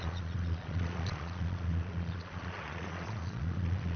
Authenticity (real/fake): fake